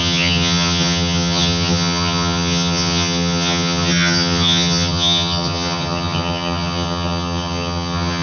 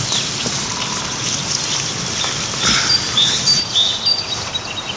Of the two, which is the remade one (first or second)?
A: first